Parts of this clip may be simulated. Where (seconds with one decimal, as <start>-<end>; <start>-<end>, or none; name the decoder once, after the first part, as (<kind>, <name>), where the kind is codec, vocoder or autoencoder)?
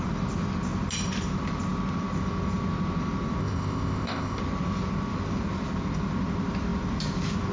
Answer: 3.4-4.4 (codec, ZipCodec)